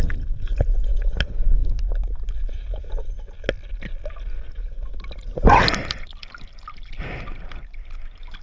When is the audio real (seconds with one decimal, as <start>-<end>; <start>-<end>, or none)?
0.0-8.4

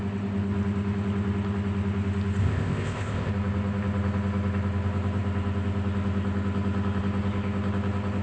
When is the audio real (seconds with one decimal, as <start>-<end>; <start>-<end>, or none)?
0.0-2.4; 3.3-8.2

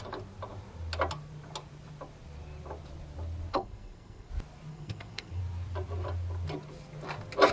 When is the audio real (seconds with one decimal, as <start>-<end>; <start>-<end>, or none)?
0.0-3.5; 4.3-4.7; 5.4-7.5

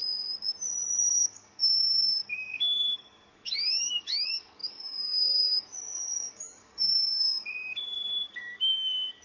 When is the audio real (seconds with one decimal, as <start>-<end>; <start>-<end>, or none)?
0.0-1.1